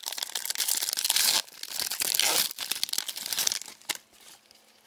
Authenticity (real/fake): real